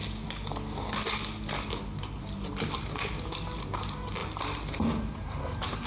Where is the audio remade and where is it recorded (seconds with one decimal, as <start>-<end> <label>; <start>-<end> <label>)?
0.0-2.5 recorded; 2.5-5.9 remade